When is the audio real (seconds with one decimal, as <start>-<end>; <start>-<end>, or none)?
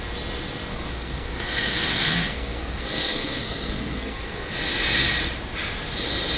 0.0-0.7; 4.5-6.4